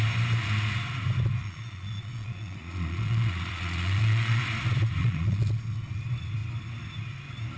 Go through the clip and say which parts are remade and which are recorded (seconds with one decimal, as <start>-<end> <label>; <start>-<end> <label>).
0.0-1.4 recorded; 1.4-4.4 remade; 4.4-5.0 recorded; 5.0-5.5 remade; 5.5-7.6 recorded